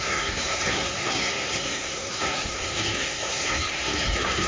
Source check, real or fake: fake